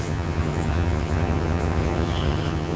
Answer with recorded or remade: remade